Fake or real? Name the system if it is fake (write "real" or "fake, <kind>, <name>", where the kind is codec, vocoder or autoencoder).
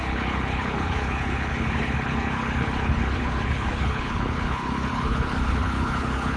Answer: fake, codec, HILCodec